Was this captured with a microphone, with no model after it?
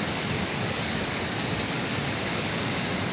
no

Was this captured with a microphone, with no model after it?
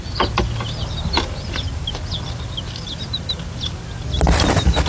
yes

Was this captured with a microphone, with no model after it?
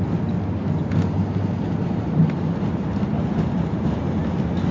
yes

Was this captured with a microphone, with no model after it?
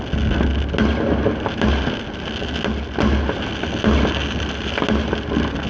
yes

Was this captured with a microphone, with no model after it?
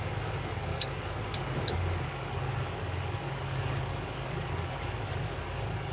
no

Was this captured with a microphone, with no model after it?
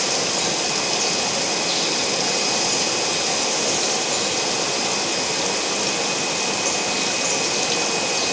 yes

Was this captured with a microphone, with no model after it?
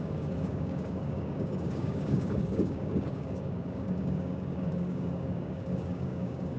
no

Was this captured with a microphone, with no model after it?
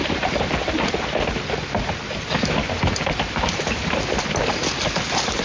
yes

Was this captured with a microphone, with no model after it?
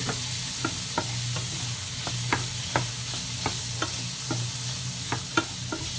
yes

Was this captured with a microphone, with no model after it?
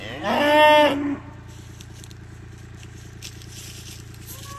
yes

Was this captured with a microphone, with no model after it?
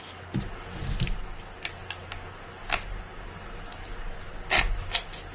yes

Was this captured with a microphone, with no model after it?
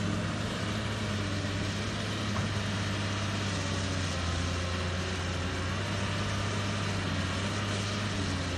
yes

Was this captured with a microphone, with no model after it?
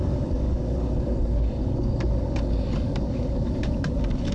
no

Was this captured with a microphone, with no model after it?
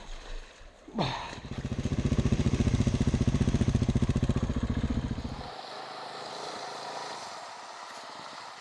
yes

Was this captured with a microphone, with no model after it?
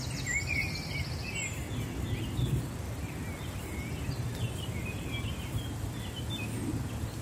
yes